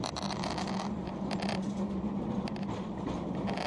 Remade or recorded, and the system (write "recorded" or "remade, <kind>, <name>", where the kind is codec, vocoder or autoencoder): recorded